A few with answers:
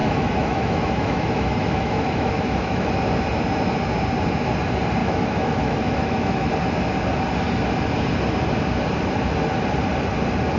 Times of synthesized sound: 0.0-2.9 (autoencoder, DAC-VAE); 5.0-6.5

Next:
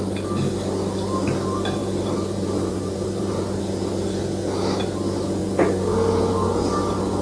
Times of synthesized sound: 1.8-3.6 (vocoder, BigVGAN v2)